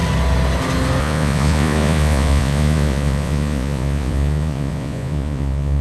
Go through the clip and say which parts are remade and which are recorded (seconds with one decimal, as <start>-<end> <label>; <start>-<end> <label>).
0.0-1.0 recorded; 1.0-5.8 remade

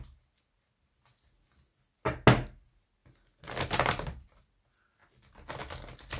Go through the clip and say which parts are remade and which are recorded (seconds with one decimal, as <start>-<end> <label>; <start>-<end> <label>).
0.0-6.2 recorded

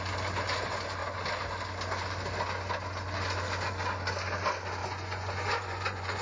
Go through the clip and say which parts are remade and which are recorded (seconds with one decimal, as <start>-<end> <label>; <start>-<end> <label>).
0.0-4.8 recorded; 4.8-6.2 remade

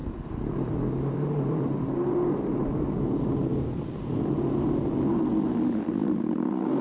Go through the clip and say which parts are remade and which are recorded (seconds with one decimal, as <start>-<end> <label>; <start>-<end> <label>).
0.0-6.8 recorded

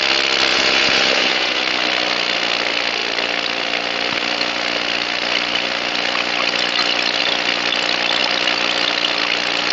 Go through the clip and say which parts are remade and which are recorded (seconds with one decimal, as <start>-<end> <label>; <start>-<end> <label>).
0.0-0.5 recorded; 0.5-1.6 remade; 1.6-9.7 recorded

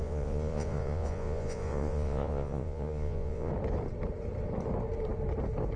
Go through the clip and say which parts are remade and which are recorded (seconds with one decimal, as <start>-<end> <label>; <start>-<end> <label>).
0.0-3.5 remade; 3.5-5.8 recorded